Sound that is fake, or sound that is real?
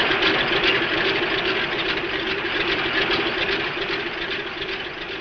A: real